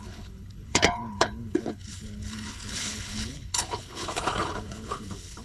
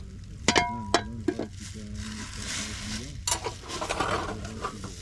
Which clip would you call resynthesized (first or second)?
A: first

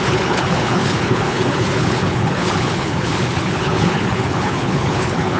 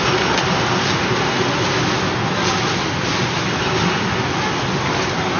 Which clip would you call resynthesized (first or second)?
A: first